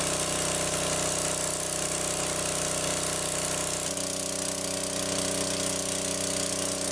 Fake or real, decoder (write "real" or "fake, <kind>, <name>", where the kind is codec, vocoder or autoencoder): real